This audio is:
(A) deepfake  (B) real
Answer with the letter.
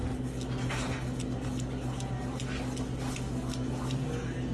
B